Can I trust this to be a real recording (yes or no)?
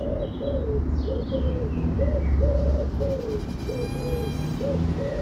yes